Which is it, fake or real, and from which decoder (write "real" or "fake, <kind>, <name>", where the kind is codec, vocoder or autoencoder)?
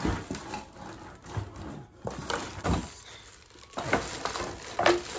real